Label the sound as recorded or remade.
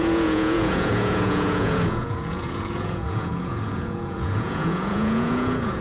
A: remade